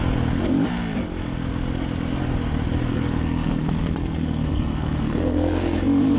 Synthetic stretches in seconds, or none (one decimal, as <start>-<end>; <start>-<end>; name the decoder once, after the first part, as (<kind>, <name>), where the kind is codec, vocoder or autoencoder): 2.9-5.8 (codec, SNAC)